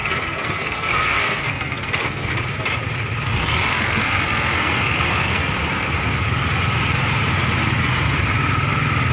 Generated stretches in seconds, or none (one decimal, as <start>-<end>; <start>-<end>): 0.0-2.3; 3.3-5.5